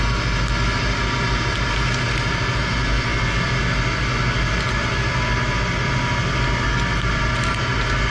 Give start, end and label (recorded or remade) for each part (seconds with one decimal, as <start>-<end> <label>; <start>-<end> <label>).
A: 0.0-8.1 recorded